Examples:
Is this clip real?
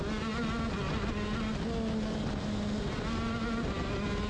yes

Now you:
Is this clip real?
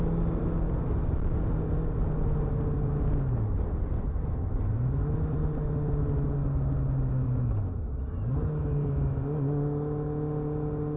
yes